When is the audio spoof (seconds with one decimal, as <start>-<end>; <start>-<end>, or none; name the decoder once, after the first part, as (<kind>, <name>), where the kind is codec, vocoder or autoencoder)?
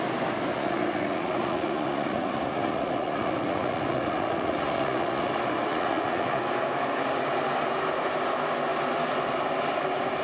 0.5-5.3 (vocoder, Vocos); 5.7-6.4